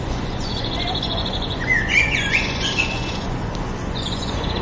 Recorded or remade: remade